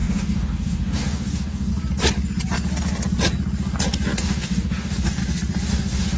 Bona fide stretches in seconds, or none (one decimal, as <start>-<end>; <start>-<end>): 1.7-4.2; 5.2-5.7